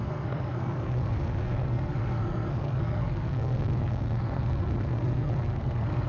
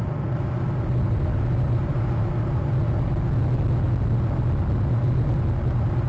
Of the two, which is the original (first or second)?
second